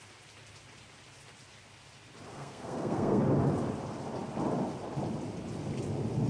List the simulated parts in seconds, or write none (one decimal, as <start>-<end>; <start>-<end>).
2.3-3.2